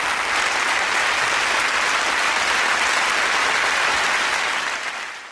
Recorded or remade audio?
recorded